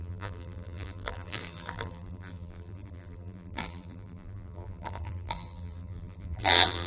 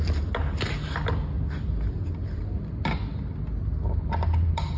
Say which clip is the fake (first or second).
first